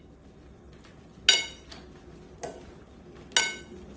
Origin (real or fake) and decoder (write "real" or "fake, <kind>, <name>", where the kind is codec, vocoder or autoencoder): real